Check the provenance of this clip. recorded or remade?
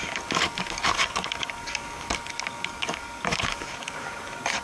remade